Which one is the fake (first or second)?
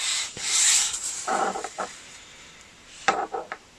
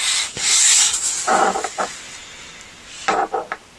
first